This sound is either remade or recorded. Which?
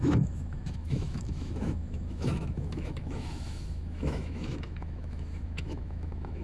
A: remade